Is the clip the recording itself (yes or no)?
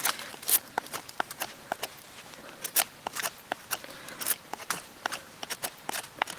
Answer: no